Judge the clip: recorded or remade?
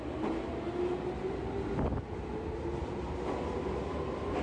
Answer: recorded